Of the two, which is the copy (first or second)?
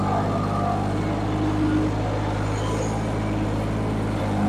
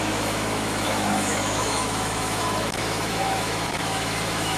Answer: second